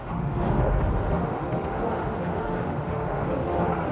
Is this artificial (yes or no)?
yes